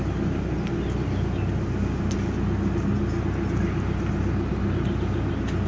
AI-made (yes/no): no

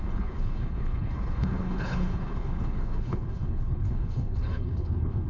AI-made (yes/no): yes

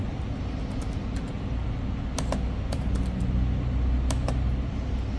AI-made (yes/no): no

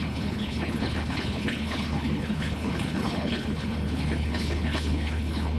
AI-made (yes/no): yes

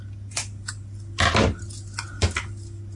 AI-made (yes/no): no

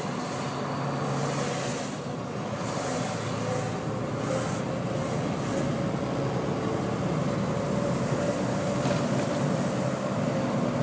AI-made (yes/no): no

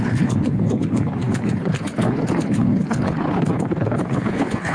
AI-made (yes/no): yes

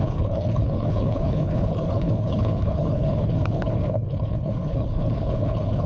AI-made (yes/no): yes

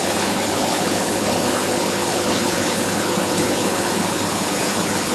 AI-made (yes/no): yes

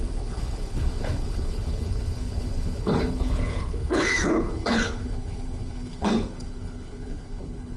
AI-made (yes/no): yes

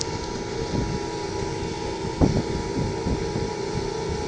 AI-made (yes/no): no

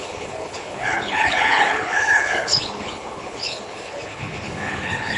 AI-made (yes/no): yes